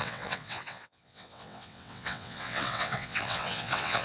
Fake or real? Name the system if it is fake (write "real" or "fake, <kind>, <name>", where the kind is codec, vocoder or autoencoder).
fake, vocoder, WaveNeXt